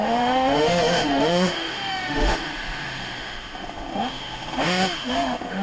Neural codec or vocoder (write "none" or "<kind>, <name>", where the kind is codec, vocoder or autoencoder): autoencoder, DAC-VAE